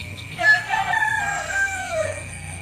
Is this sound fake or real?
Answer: fake